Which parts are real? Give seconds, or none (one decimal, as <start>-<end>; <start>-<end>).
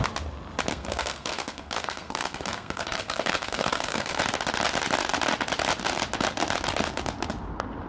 0.0-0.7; 4.2-7.9